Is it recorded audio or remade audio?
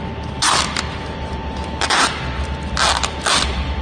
recorded